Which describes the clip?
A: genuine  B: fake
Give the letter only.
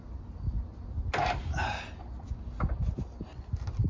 A